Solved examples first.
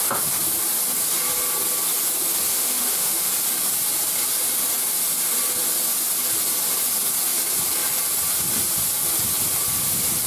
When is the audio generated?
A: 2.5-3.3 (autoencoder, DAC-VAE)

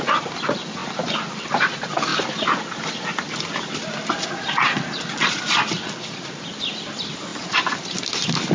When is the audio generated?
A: none

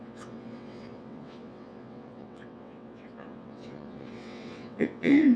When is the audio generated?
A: 0.0-5.4 (vocoder, WaveNeXt)